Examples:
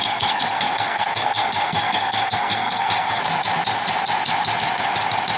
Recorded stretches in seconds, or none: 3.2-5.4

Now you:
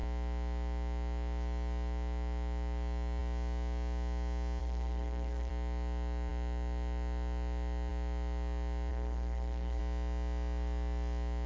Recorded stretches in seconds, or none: 0.0-4.6; 5.5-8.9; 9.8-11.5